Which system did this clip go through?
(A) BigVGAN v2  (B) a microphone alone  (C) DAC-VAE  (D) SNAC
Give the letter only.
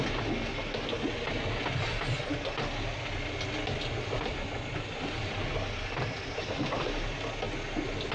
B